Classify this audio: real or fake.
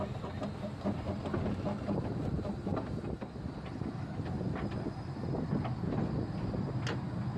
real